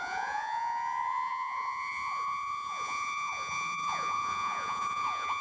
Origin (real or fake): fake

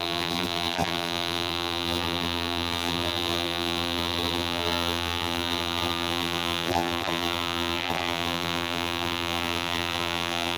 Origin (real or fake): fake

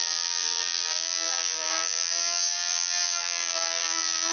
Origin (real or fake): fake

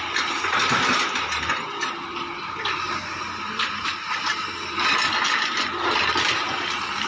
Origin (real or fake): fake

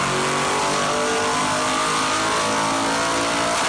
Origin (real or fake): real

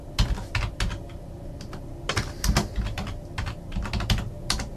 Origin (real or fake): real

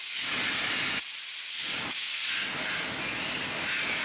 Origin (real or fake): real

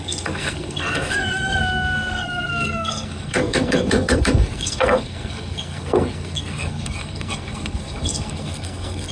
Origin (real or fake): fake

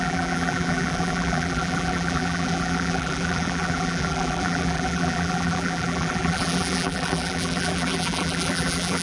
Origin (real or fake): fake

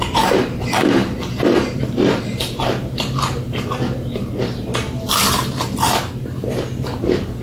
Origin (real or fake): fake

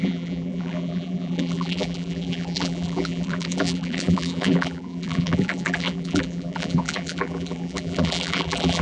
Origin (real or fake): fake